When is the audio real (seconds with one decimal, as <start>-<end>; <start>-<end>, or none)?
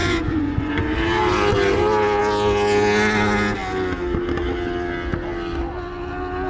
0.7-6.5